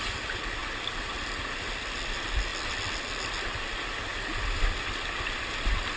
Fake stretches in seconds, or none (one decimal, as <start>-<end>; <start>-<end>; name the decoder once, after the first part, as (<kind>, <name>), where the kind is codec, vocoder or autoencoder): none

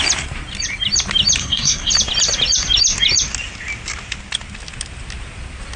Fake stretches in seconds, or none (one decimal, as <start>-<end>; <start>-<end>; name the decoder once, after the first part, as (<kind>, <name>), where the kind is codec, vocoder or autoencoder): 1.4-1.9 (codec, SNAC)

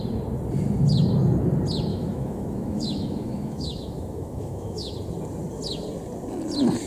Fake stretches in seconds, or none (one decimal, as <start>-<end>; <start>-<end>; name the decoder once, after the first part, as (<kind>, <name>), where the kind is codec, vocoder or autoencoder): 1.9-4.9 (autoencoder, DAC-VAE)